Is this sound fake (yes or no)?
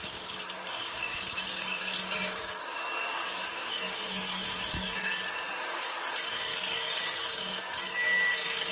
yes